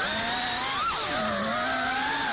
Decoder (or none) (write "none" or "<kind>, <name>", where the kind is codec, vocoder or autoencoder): none